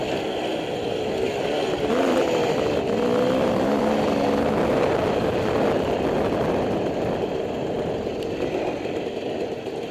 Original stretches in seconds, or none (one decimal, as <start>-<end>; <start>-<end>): 0.0-9.9